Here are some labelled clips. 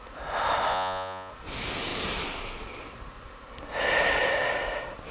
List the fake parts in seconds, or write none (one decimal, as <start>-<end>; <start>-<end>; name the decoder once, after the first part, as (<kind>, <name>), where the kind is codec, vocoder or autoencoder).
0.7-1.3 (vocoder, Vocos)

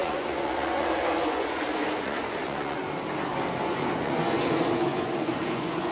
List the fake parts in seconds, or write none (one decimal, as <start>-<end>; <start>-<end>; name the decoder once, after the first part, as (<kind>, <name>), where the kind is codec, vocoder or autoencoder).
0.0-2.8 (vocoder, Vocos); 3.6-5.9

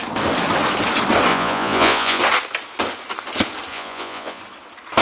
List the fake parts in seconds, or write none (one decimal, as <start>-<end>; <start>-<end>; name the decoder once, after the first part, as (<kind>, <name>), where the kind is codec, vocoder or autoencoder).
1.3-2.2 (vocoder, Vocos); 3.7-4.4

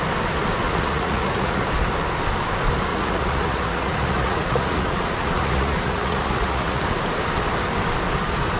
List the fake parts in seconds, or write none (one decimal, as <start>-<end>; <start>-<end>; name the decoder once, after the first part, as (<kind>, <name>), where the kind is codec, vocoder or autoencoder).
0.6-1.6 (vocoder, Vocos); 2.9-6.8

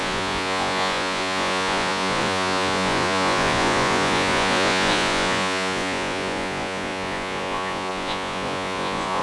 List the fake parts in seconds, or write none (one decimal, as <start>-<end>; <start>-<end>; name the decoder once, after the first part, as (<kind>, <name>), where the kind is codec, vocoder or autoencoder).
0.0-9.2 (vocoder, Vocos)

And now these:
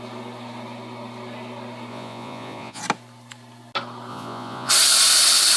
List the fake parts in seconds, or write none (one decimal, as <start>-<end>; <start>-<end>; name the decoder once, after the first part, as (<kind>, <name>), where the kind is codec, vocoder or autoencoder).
1.9-2.8 (vocoder, Vocos); 4.1-4.7